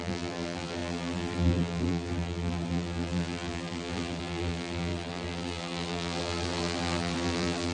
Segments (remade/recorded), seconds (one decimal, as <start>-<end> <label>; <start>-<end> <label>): 0.0-7.7 remade